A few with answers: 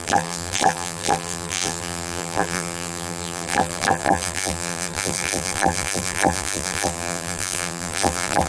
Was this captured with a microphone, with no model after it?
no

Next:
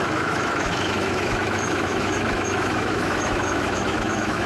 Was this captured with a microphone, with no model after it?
no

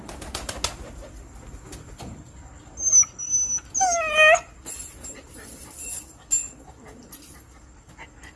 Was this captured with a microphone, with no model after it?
yes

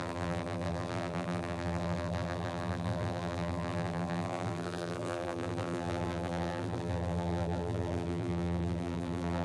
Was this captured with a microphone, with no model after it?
no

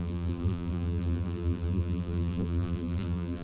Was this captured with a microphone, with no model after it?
no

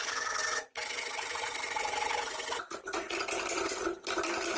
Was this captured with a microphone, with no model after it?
yes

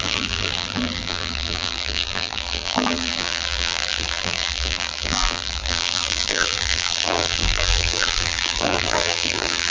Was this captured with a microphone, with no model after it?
no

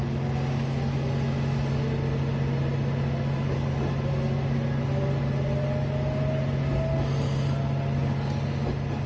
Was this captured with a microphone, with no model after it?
yes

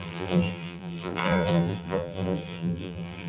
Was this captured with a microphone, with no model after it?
no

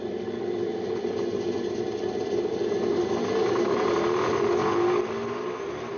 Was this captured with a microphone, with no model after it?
yes